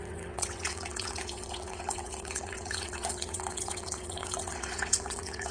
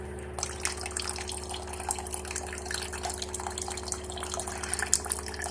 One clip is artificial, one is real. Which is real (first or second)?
second